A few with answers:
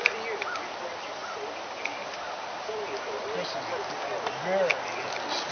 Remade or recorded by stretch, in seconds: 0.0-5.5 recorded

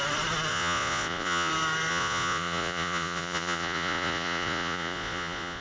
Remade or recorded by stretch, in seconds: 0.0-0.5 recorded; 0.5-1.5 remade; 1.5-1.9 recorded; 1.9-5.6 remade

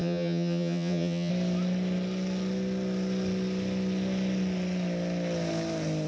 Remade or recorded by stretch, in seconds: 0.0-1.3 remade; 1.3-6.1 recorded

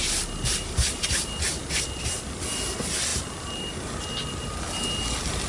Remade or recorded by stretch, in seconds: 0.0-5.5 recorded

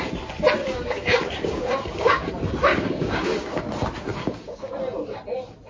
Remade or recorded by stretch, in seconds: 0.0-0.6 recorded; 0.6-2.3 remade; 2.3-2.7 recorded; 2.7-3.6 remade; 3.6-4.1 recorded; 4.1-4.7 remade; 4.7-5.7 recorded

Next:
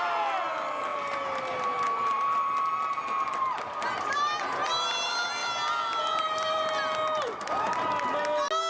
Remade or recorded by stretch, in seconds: 0.0-8.7 recorded